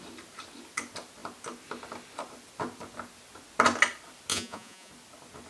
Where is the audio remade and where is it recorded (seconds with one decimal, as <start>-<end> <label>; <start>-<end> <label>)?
0.0-4.3 recorded; 4.3-4.9 remade; 4.9-5.5 recorded